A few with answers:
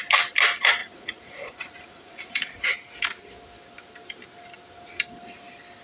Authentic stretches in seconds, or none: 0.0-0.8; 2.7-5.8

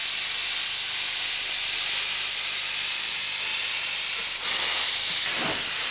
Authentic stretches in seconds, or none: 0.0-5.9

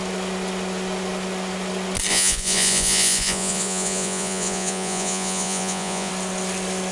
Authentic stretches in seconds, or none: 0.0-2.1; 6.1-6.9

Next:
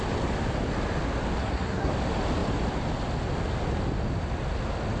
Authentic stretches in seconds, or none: 0.0-1.4; 1.9-5.0

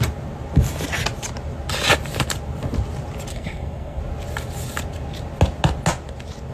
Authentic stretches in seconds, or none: 0.0-3.3; 4.0-6.5

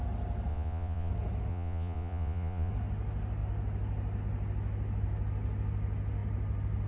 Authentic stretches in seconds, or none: 0.0-0.5; 1.1-1.5; 2.7-6.9

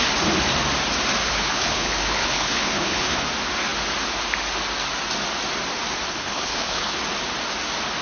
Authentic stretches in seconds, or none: 0.0-1.2; 3.2-6.1; 7.0-8.0